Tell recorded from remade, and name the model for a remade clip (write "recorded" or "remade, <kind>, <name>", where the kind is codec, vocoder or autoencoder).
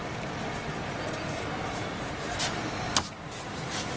recorded